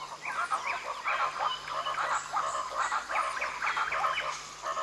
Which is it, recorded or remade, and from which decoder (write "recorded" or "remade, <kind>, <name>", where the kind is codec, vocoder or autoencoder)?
recorded